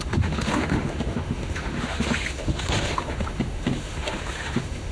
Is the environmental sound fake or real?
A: fake